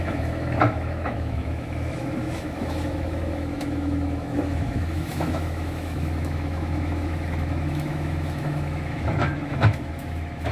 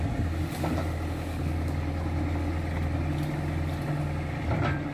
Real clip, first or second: second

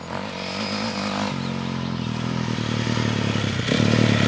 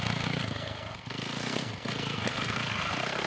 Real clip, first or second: first